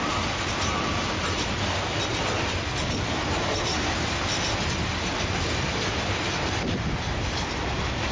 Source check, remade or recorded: recorded